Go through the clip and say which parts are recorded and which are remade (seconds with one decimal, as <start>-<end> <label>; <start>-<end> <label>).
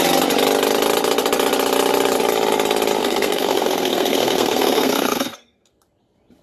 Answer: 0.0-3.0 recorded; 3.0-5.8 remade; 5.8-6.4 recorded